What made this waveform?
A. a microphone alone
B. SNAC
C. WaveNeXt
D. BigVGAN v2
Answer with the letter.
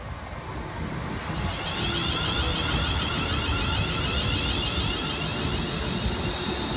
A